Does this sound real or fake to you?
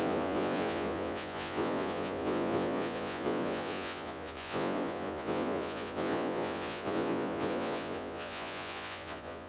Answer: fake